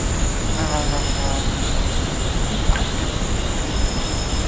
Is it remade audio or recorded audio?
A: recorded